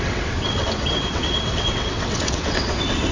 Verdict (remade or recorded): remade